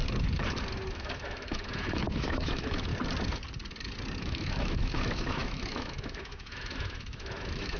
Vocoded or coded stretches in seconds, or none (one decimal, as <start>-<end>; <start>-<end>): 0.9-2.9; 4.2-7.8